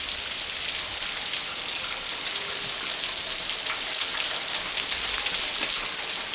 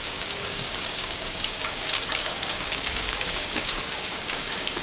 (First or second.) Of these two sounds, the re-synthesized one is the second